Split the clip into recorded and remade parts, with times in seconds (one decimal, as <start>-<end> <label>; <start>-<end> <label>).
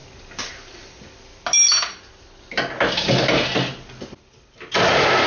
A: 0.0-5.3 recorded